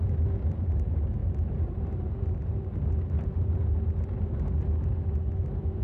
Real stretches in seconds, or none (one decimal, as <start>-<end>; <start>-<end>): 0.0-5.8